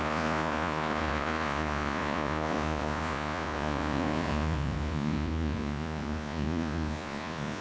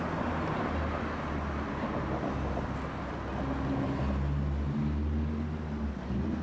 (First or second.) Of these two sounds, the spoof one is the first